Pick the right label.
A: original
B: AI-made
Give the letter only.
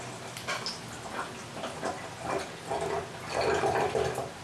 A